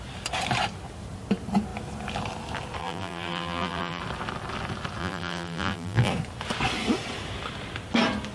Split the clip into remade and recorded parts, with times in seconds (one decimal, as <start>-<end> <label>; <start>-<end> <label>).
0.0-2.8 recorded; 2.8-4.0 remade; 4.0-5.0 recorded; 5.0-6.1 remade; 6.1-8.3 recorded

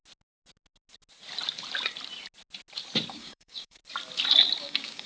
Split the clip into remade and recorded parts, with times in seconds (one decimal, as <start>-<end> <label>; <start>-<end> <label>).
0.0-3.1 recorded; 3.1-3.8 remade; 3.8-4.6 recorded; 4.6-5.1 remade

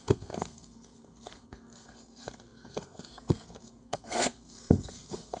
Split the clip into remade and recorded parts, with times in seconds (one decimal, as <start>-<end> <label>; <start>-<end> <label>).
0.0-5.4 remade

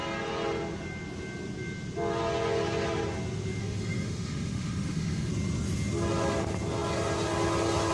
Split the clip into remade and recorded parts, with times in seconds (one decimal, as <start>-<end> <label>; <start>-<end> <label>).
0.0-3.6 recorded; 3.6-5.3 remade; 5.3-7.9 recorded

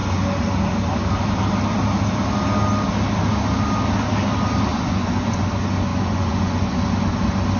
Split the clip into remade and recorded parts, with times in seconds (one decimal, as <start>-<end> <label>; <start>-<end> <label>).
0.0-4.7 recorded; 4.7-5.4 remade; 5.4-5.9 recorded; 5.9-6.8 remade; 6.8-7.6 recorded